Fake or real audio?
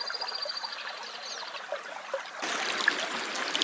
real